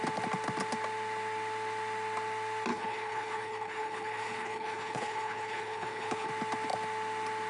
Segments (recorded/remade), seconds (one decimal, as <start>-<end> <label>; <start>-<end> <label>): 0.0-2.7 recorded; 2.7-6.3 remade; 6.3-7.5 recorded